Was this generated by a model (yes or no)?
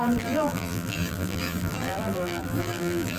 yes